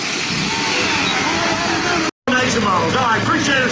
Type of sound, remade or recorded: recorded